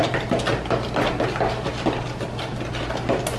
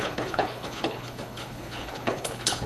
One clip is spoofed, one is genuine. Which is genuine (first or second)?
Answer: first